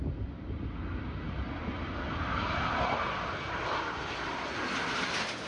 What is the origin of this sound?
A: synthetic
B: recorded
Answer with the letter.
B